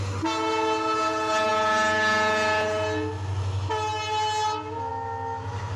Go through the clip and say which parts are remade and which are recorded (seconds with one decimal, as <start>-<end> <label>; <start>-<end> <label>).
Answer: 0.0-5.8 recorded